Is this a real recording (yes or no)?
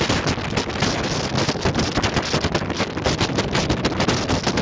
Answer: yes